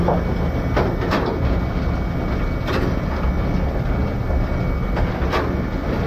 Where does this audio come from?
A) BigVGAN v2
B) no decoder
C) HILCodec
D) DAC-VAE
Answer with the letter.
B